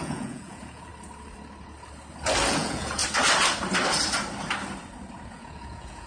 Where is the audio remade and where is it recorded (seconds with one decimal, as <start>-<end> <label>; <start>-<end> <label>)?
0.0-0.9 remade; 0.9-2.5 recorded; 2.5-3.0 remade; 3.0-5.3 recorded; 5.3-6.1 remade